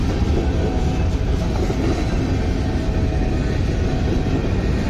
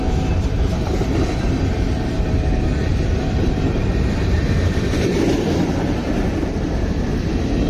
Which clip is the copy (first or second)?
second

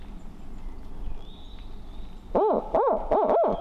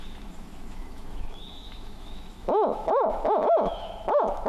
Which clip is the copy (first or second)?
second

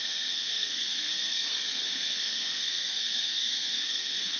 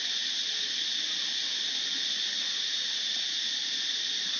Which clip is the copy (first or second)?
first